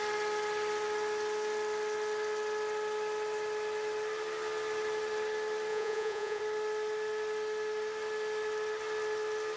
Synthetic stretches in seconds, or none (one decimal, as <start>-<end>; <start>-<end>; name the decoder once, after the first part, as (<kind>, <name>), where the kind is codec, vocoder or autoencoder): 5.7-6.4 (vocoder, Vocos)